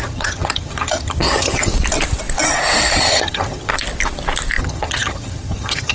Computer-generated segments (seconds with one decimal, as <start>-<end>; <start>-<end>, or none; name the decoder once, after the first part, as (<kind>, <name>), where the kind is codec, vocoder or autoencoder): 0.0-1.7 (vocoder, HiFi-GAN); 3.0-3.7; 4.6-5.9